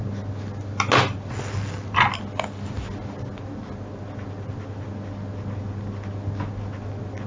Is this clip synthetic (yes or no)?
no